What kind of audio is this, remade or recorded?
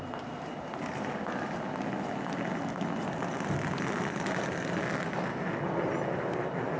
recorded